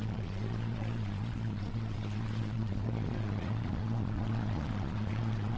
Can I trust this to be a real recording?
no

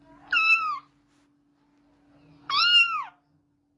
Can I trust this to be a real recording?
yes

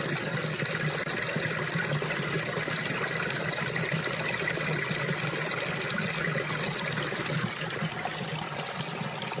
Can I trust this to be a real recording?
yes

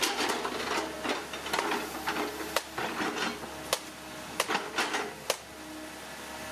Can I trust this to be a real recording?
yes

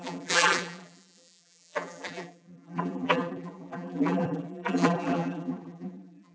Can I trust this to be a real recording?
no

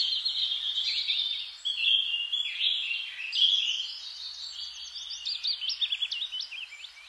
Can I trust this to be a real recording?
yes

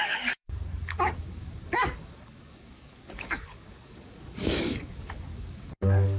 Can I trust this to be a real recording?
no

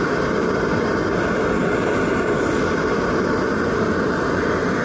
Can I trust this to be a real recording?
yes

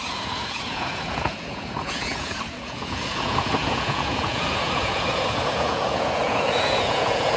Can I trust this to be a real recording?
no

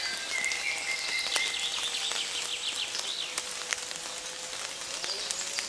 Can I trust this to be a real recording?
yes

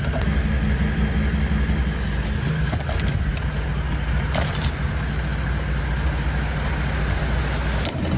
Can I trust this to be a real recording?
yes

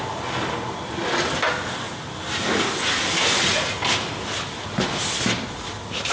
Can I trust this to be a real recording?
yes